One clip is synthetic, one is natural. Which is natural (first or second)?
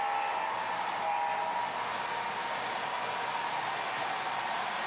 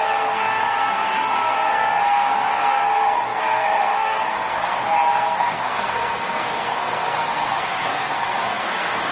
first